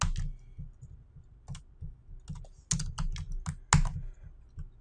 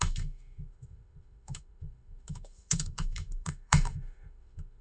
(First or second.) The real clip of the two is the first